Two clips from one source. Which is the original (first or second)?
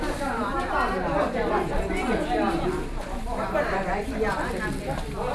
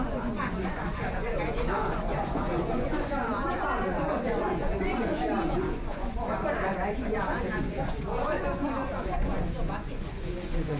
first